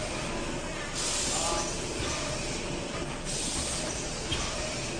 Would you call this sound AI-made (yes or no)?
no